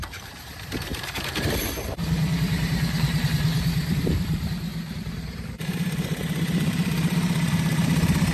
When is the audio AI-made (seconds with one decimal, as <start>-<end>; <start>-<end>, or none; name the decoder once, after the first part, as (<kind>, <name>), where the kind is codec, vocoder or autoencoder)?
0.0-8.3 (vocoder, BigVGAN v2)